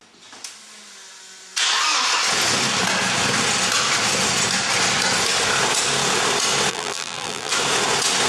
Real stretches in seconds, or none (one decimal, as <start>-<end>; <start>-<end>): 0.0-6.7; 7.5-8.3

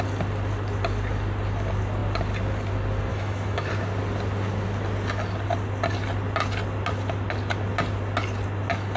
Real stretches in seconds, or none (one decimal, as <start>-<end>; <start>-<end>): 0.0-3.1; 3.7-9.0

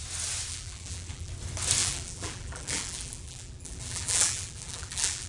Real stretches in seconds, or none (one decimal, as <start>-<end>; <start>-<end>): 0.0-0.5; 1.3-1.8

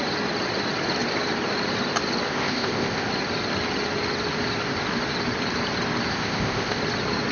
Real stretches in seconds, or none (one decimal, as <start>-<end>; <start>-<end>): 0.0-2.3; 3.1-6.1; 6.8-7.3

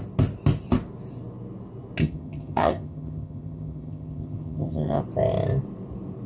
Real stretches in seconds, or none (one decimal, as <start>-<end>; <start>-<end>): 0.0-2.0; 5.0-6.3

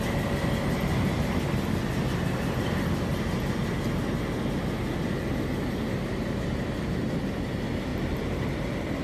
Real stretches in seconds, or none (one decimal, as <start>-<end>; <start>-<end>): 0.0-7.9; 8.5-9.0

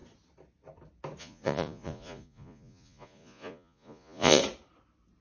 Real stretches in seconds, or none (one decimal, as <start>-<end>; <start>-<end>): 0.0-1.2; 4.4-5.2

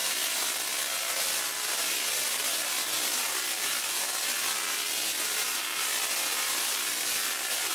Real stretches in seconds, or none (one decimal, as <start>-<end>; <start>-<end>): 0.0-7.7